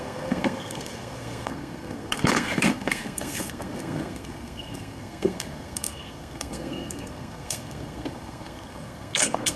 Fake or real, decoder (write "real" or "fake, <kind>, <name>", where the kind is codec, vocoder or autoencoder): fake, codec, SNAC